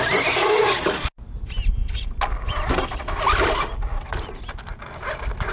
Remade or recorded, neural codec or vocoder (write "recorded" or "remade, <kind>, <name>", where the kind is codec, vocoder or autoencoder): recorded